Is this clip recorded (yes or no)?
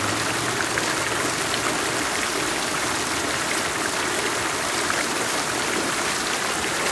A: yes